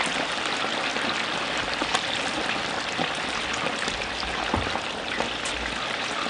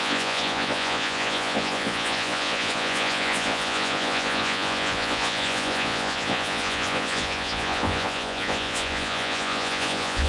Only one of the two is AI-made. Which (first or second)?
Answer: second